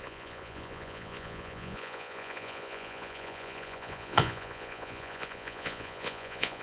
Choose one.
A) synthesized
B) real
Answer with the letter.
A